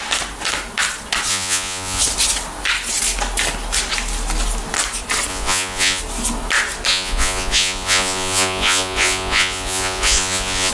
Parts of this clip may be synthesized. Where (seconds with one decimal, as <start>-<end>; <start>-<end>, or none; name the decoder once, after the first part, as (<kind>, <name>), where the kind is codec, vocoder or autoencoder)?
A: 1.3-2.0 (vocoder, Vocos); 5.3-6.0; 6.9-10.7